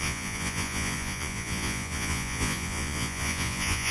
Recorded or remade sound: remade